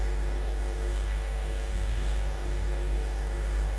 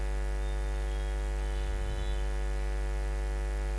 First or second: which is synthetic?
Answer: first